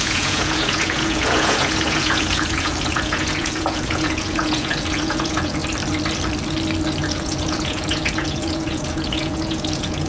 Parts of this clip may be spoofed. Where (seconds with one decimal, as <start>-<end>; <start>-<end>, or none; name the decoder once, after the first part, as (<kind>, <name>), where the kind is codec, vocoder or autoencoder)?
0.0-5.6 (vocoder, Vocos); 7.0-10.1